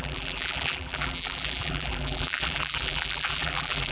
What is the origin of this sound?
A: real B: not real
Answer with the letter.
B